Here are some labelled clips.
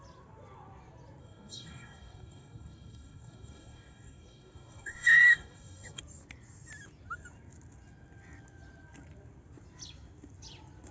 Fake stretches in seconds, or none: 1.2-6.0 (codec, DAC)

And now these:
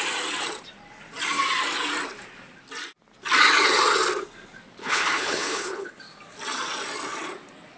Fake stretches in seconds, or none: 4.8-6.0 (codec, HILCodec)

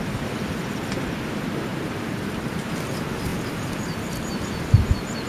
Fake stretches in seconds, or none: 1.7-2.7 (vocoder, BigVGAN v2); 3.3-4.3

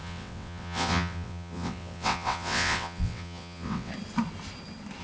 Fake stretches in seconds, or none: 0.0-3.9 (vocoder, WaveNeXt)